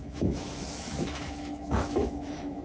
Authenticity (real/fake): fake